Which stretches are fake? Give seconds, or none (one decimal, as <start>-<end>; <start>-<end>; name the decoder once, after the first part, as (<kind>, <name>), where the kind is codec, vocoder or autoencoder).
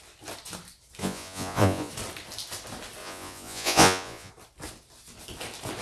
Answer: 1.0-1.9 (vocoder, Vocos); 3.0-4.3